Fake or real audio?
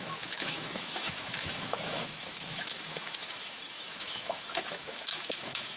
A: fake